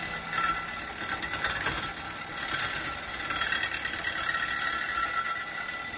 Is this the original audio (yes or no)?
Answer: yes